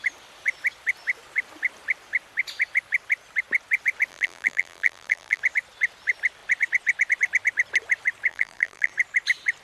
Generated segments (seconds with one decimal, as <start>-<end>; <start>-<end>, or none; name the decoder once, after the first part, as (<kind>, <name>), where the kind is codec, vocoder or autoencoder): 4.1-5.4 (vocoder, BigVGAN v2); 8.3-8.9